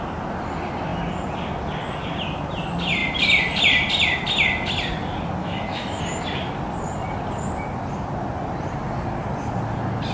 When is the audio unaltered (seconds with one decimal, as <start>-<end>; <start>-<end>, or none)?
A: 0.0-5.4; 6.0-10.1